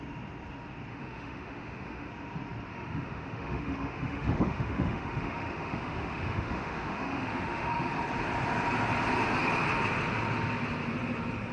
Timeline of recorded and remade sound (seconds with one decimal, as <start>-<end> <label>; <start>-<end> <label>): 0.0-0.9 recorded; 0.9-2.1 remade; 2.1-2.7 recorded; 2.7-7.9 remade; 7.9-11.5 recorded